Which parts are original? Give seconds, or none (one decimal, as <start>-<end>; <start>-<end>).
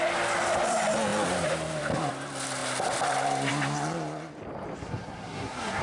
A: 0.0-4.8